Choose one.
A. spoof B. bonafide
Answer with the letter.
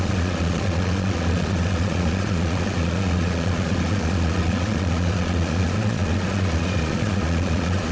A